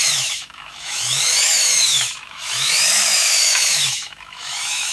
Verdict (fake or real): fake